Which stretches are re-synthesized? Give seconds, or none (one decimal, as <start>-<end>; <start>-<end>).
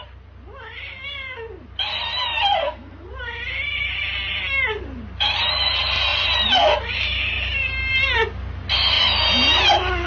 2.6-3.1